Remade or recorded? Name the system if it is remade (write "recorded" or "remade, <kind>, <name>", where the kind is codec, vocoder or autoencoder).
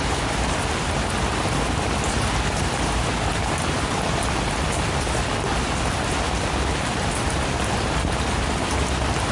recorded